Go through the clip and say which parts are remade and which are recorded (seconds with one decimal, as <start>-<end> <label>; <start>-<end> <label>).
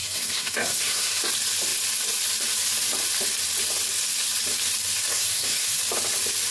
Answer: 0.0-1.2 remade; 1.2-5.1 recorded; 5.1-5.8 remade; 5.8-6.5 recorded